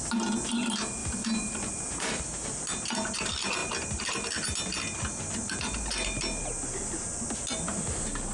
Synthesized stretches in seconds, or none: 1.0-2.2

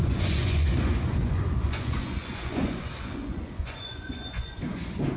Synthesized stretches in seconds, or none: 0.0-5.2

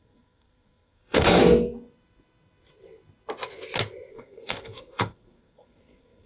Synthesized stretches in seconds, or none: 0.0-1.4; 4.1-6.3

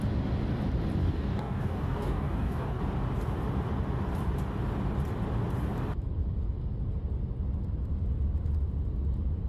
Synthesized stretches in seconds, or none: 1.0-2.8

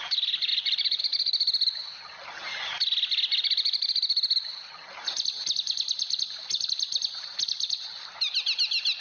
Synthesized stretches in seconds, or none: none

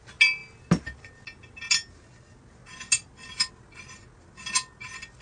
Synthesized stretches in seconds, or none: none